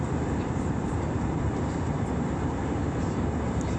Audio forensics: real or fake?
fake